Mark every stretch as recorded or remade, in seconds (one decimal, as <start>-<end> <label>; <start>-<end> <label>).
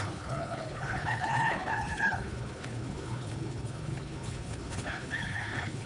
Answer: 0.0-5.9 remade